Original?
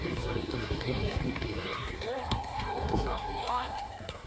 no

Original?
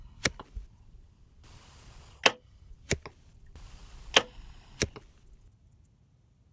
yes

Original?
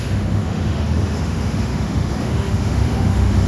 no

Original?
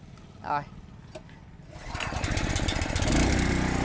yes